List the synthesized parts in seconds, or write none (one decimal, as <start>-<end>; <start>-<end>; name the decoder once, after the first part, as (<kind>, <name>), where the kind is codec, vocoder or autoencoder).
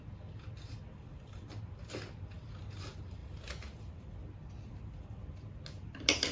none